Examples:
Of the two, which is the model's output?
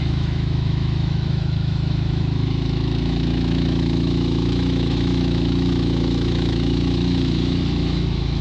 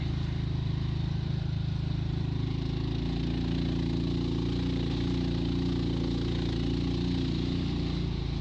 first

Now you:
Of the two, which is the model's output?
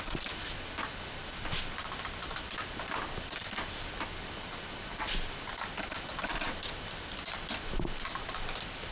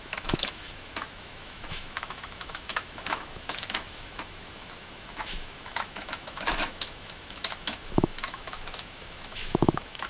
second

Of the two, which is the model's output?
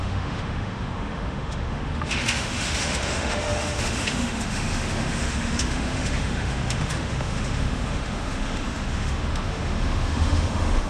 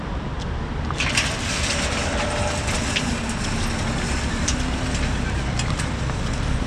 first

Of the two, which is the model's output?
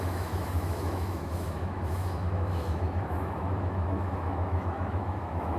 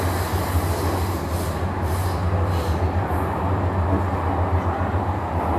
first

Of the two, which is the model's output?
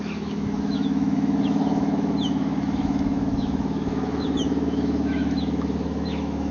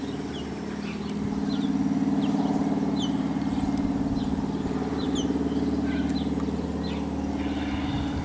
first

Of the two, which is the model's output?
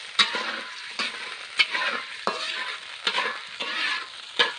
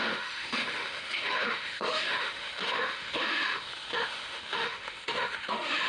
second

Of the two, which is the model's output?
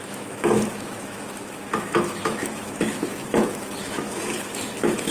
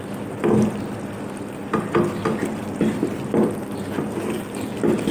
first